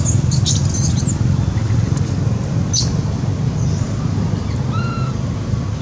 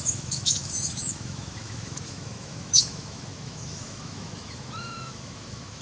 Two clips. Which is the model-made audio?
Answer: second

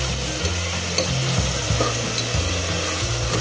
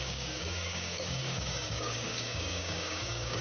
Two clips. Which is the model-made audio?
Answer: second